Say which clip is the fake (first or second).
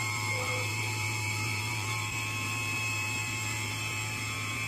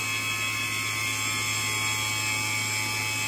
first